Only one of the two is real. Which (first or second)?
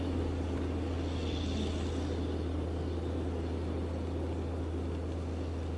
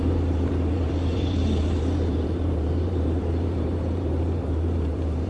first